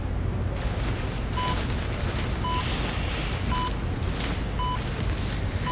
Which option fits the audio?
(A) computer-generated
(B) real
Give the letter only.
B